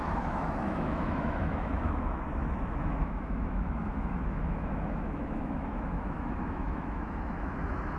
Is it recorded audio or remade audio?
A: remade